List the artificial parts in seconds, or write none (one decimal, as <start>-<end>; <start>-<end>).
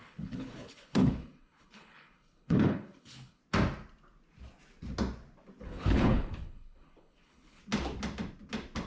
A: 0.0-3.4; 5.6-7.6